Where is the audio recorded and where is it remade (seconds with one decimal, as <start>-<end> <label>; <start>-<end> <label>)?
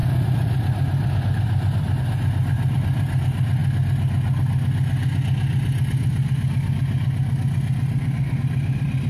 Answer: 0.0-3.6 remade; 3.6-8.4 recorded; 8.4-9.1 remade